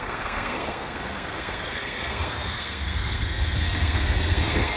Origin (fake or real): fake